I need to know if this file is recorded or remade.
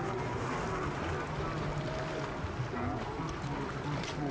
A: recorded